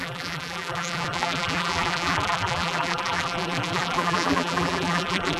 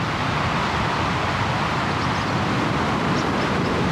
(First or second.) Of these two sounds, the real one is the second